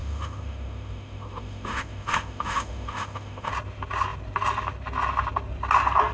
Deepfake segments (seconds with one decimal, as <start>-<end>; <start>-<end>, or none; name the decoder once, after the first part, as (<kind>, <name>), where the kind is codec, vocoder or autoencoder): 0.0-3.5 (autoencoder, DAC-VAE)